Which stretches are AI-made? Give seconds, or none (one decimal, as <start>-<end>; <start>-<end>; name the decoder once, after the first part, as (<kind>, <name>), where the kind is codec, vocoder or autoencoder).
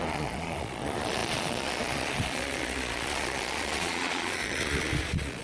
0.0-5.4 (vocoder, Vocos)